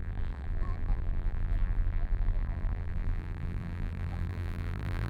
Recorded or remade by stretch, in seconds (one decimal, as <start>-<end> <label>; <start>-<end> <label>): 0.0-5.1 remade